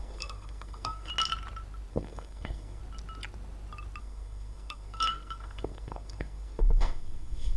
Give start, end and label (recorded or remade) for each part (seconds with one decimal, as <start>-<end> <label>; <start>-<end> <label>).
0.0-1.1 remade; 1.1-1.9 recorded; 1.9-2.8 remade; 2.8-4.0 recorded; 4.0-7.6 remade